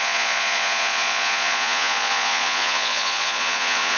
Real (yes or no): no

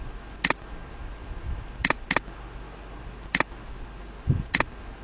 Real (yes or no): yes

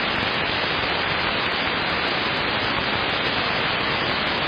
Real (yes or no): yes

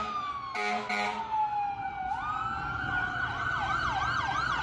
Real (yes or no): yes